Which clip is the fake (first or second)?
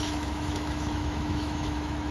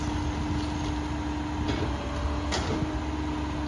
first